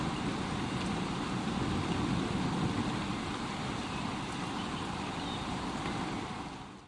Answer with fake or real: real